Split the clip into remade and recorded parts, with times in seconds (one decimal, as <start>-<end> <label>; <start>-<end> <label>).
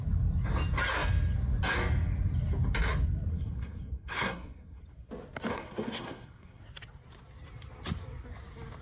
0.0-3.3 recorded; 3.3-4.8 remade; 4.8-5.5 recorded; 5.5-6.6 remade; 6.6-8.8 recorded